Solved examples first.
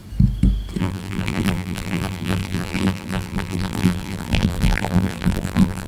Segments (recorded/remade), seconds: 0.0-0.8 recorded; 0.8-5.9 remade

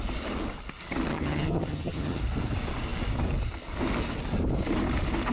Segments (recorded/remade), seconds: 0.0-1.1 recorded; 1.1-2.2 remade; 2.2-5.3 recorded

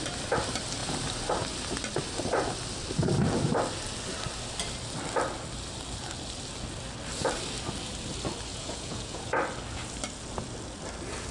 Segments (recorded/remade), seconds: 0.0-8.5 recorded; 8.5-9.3 remade; 9.3-11.3 recorded

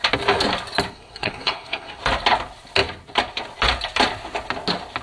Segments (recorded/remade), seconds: 0.0-0.9 recorded; 0.9-2.0 remade; 2.0-5.0 recorded

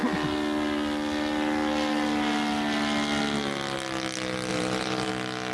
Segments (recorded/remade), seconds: 0.0-4.5 recorded; 4.5-5.1 remade; 5.1-5.5 recorded